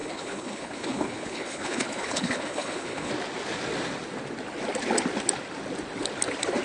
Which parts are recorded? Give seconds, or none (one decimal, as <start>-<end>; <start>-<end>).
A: 3.1-6.6